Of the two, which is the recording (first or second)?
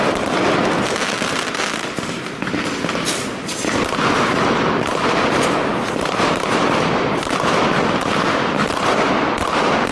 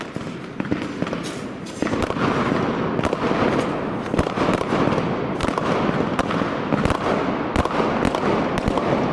second